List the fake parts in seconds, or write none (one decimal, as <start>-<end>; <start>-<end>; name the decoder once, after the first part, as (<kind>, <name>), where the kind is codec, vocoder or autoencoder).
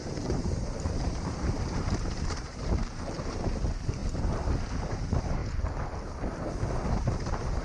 0.0-4.0 (vocoder, BigVGAN v2); 4.9-5.4; 6.9-7.6